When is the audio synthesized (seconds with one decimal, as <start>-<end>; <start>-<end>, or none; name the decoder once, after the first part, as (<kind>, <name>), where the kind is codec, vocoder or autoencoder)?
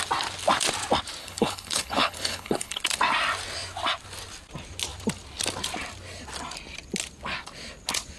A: 1.2-2.8 (codec, HILCodec)